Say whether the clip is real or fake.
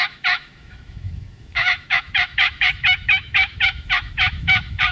fake